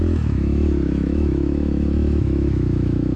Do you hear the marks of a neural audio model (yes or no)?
yes